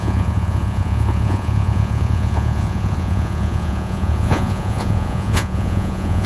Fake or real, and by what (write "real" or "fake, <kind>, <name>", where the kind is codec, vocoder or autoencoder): fake, vocoder, Vocos